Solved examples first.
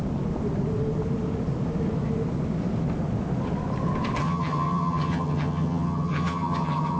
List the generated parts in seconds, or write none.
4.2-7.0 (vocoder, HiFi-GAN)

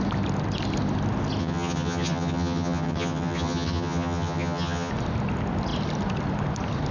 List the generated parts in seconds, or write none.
1.4-4.9 (vocoder, HiFi-GAN)

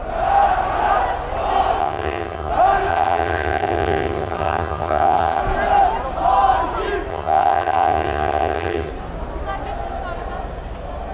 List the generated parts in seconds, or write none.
1.8-2.5 (vocoder, HiFi-GAN); 2.9-5.4; 7.1-8.9

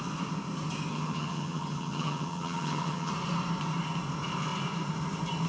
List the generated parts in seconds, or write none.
0.9-3.1 (vocoder, HiFi-GAN)

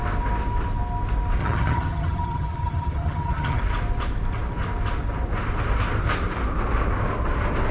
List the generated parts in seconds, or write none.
1.4-3.6 (vocoder, HiFi-GAN)

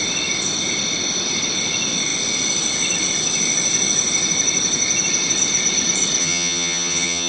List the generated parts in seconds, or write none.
6.2-7.3 (vocoder, HiFi-GAN)

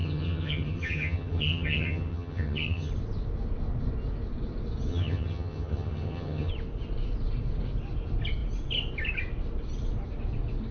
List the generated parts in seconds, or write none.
0.0-2.9 (vocoder, HiFi-GAN); 4.9-6.5

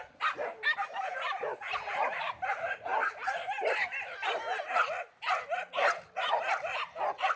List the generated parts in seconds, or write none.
none